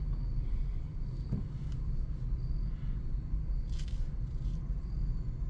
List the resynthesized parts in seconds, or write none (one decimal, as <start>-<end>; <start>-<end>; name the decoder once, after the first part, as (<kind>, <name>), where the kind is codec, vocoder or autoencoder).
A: none

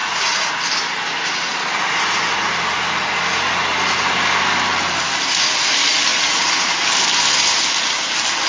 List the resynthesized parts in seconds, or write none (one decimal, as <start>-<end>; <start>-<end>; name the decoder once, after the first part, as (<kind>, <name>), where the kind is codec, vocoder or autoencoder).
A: 0.0-0.5 (vocoder, Vocos); 6.1-6.8

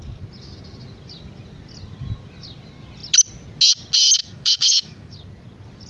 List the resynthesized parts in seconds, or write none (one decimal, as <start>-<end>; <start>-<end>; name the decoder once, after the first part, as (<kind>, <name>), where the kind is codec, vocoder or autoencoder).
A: 4.2-5.1 (autoencoder, DAC-VAE)

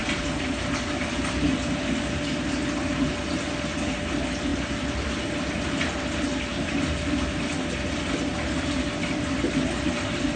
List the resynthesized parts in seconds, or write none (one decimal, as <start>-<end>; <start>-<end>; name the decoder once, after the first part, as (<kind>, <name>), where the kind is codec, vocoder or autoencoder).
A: none

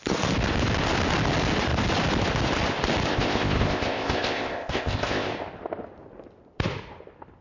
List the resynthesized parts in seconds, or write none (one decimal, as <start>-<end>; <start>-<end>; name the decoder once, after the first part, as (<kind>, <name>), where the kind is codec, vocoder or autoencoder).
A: 3.1-5.3 (codec, ZipCodec)